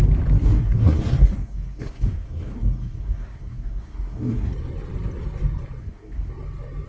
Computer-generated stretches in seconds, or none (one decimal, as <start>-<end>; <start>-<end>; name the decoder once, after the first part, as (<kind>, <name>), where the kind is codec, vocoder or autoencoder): 0.4-4.5 (codec, SNAC); 5.8-6.3